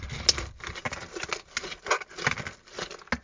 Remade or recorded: recorded